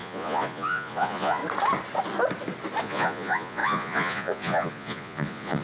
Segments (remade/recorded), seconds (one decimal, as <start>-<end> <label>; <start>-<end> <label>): 0.0-1.4 remade; 1.4-2.8 recorded; 2.8-5.6 remade